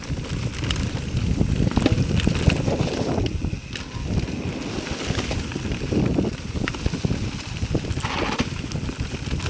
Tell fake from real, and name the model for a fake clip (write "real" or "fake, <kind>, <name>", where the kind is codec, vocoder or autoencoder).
real